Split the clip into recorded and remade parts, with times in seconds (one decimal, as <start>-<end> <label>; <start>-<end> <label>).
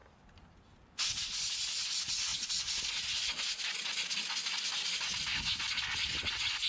0.0-6.7 recorded